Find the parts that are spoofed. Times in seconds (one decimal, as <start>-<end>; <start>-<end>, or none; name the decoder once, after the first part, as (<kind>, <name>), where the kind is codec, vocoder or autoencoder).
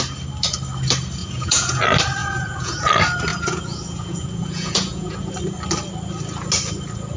1.2-1.8 (vocoder, Vocos); 2.2-2.8; 3.3-5.3